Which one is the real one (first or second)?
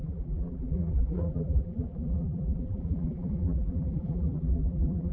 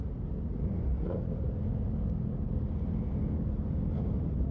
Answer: second